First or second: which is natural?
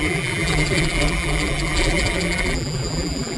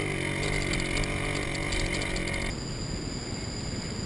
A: second